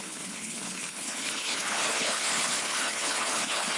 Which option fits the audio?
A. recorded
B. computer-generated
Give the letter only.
B